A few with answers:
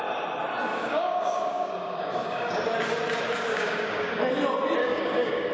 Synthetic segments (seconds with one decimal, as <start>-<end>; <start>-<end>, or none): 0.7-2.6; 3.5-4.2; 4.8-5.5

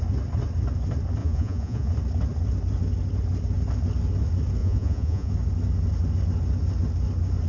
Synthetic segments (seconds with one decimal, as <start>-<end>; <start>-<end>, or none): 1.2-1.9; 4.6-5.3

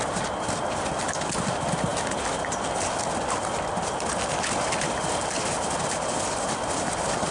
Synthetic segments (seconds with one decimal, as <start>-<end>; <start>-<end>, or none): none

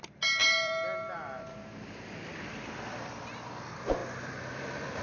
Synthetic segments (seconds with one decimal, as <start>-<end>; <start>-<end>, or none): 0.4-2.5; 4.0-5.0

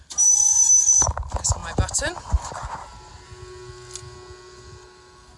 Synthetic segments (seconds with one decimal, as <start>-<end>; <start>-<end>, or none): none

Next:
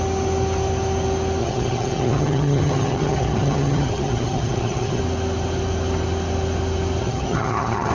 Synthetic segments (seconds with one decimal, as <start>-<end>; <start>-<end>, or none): 1.4-5.0; 7.0-7.9

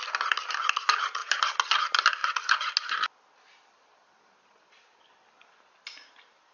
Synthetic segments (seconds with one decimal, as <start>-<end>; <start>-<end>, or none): none

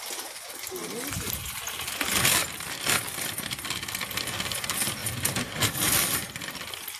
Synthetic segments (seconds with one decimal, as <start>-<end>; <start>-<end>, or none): 5.0-6.3